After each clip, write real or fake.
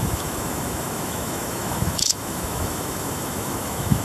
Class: fake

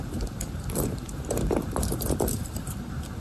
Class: fake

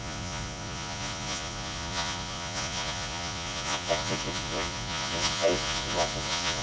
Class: fake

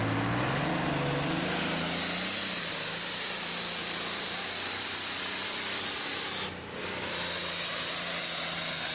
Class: real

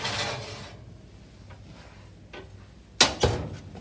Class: real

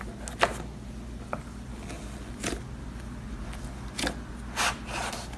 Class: real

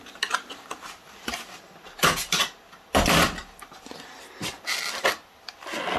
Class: real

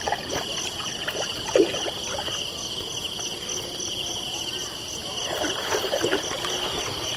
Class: real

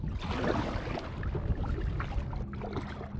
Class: real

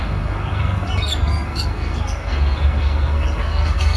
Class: fake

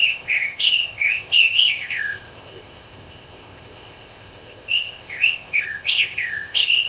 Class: fake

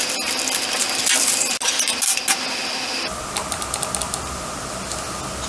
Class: real